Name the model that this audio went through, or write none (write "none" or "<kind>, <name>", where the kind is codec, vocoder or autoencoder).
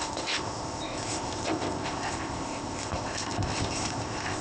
codec, ZipCodec